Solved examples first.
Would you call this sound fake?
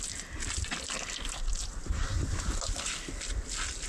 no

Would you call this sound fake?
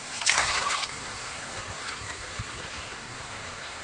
yes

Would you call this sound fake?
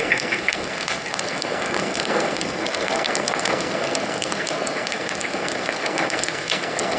yes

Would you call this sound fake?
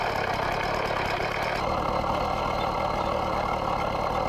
no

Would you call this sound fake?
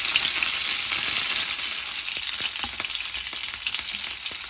no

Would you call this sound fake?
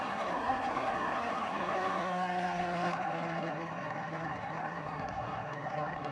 yes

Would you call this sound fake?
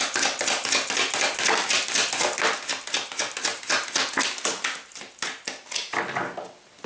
no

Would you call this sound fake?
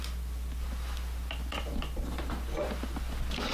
no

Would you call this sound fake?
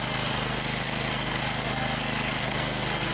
yes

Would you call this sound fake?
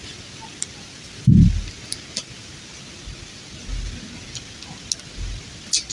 no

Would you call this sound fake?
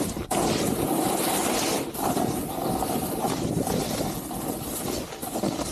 no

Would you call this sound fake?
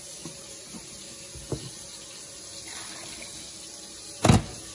no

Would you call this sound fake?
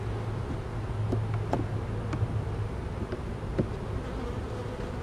no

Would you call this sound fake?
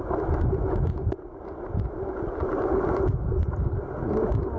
no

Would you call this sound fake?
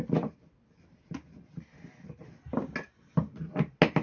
no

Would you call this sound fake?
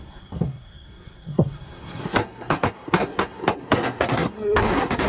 yes